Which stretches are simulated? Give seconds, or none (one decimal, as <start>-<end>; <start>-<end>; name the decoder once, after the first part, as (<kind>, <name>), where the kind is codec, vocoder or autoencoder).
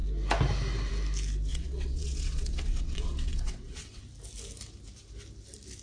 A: 1.5-4.0 (vocoder, WaveNeXt)